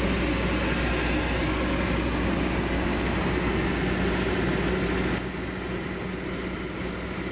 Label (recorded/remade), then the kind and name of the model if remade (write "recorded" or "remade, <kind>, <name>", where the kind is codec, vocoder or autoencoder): recorded